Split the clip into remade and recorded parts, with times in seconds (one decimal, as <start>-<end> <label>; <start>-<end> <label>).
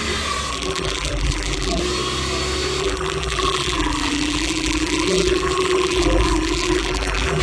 0.0-0.5 recorded; 0.5-1.8 remade; 1.8-2.8 recorded; 2.8-7.4 remade